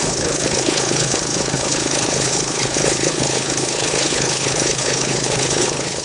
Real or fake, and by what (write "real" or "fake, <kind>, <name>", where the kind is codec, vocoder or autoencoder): fake, codec, HILCodec